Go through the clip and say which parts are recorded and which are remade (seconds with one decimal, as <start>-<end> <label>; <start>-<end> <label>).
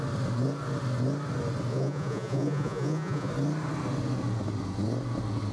0.0-1.7 recorded; 1.7-3.3 remade; 3.3-5.5 recorded